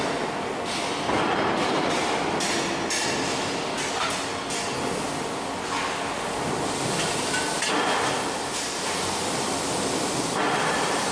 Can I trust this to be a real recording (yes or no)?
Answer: yes